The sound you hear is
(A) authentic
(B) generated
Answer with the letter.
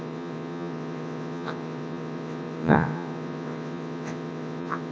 B